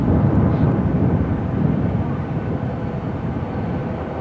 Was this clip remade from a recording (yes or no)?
no